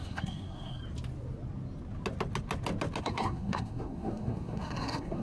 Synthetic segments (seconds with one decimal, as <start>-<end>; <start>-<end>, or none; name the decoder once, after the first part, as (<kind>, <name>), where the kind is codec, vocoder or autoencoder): 0.0-0.8 (codec, SNAC); 3.0-5.2

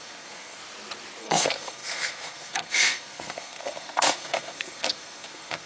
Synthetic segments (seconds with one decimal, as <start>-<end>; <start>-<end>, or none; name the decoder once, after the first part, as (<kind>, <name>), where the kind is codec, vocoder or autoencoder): 0.0-0.6 (codec, SNAC); 1.2-5.7